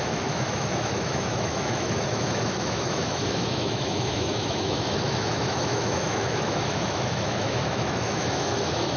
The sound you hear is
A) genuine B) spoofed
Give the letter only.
B